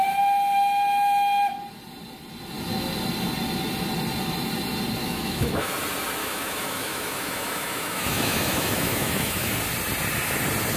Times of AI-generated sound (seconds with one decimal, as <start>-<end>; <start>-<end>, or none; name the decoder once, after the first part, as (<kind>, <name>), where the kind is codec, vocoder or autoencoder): 5.0-5.7 (autoencoder, DAC-VAE); 6.2-9.5

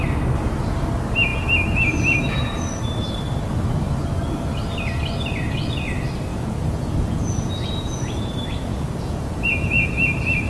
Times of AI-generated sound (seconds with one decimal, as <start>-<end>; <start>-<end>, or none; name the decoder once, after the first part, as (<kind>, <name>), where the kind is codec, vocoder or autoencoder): 6.3-8.2 (vocoder, Vocos); 8.7-9.9

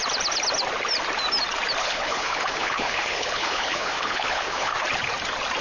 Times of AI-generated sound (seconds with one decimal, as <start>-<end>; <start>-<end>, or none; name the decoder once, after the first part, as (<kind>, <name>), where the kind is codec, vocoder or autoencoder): 1.8-4.7 (codec, HILCodec)

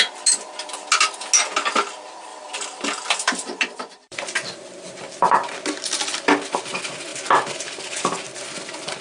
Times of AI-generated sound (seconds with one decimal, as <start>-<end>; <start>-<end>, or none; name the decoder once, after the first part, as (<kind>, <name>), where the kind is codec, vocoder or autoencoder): 2.3-5.1 (vocoder, BigVGAN v2)

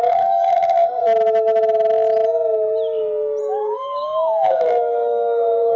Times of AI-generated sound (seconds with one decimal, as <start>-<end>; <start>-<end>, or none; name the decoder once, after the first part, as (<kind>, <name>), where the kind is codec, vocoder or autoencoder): 0.0-1.0 (codec, SNAC); 3.4-5.8

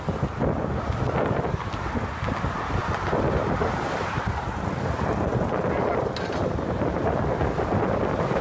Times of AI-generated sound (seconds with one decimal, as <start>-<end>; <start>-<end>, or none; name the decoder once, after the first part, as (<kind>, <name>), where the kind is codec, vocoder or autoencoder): none

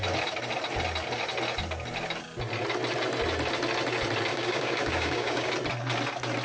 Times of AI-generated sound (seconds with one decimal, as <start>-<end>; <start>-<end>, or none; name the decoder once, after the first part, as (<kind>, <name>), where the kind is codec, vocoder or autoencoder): 4.3-5.5 (codec, DAC)

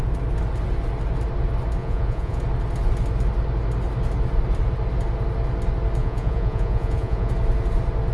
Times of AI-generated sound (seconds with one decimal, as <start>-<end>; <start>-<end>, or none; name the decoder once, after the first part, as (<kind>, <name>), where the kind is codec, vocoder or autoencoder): 1.8-2.4 (vocoder, Vocos); 6.0-7.3